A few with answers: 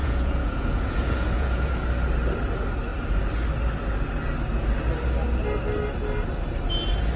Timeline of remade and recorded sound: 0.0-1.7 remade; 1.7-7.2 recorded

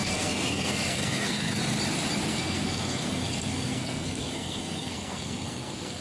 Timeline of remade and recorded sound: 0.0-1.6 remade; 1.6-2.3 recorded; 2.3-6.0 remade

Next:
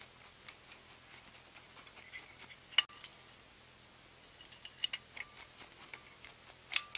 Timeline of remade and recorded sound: 0.0-7.0 recorded

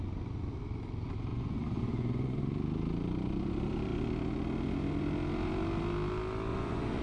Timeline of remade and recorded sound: 0.0-1.3 recorded; 1.3-2.4 remade; 2.4-6.5 recorded; 6.5-7.0 remade